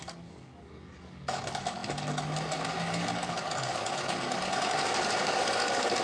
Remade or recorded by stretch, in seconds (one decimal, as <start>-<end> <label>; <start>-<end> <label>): 0.0-6.0 remade